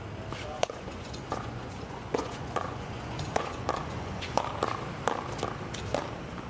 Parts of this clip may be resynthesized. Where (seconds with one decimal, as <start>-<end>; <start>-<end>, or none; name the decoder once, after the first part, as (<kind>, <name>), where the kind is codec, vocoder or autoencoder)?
0.5-4.4 (vocoder, Vocos)